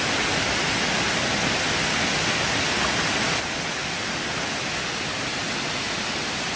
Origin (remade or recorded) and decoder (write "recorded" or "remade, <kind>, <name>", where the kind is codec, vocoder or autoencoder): recorded